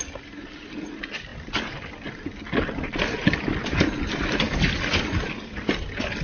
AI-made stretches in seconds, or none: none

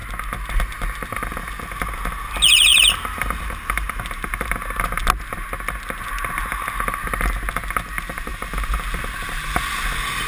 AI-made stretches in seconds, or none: none

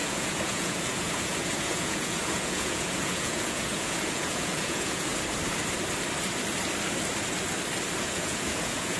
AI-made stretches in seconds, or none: 0.0-5.1 (vocoder, Vocos); 8.0-9.0

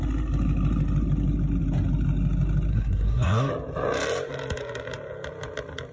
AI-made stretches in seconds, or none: 2.7-3.5 (codec, SNAC)

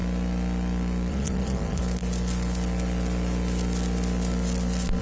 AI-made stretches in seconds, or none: 1.1-1.8 (vocoder, Vocos)

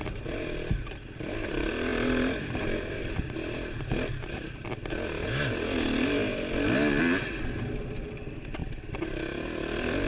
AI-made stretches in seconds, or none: none

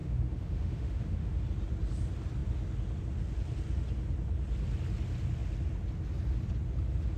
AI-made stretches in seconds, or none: 0.0-1.4 (autoencoder, DAC-VAE)

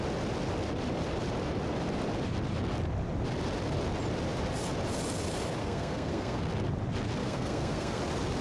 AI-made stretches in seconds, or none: 5.6-6.4 (codec, SNAC); 7.2-8.0